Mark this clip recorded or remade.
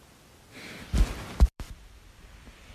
remade